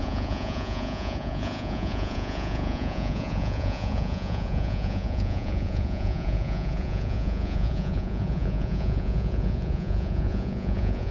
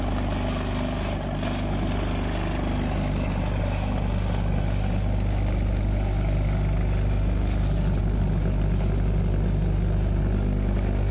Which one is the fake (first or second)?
first